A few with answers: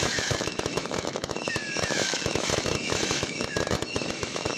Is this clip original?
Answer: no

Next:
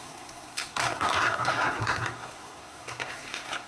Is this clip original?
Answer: no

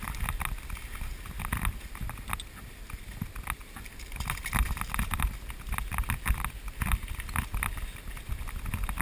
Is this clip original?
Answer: yes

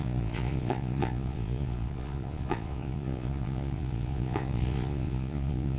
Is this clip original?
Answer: no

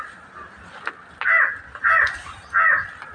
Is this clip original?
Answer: yes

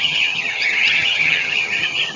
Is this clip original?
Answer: no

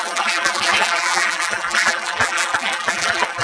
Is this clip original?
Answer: no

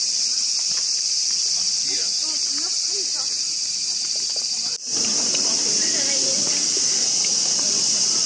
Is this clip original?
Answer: no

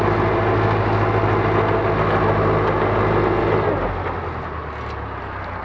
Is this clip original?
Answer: yes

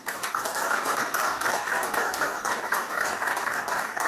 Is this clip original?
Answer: no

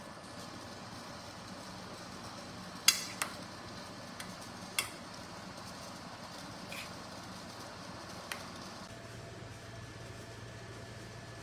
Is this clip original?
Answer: yes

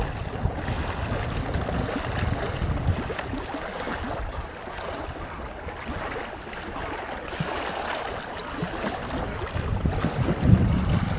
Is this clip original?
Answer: yes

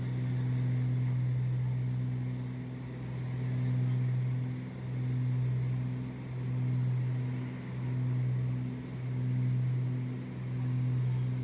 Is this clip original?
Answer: yes